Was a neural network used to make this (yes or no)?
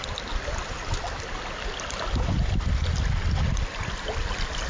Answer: no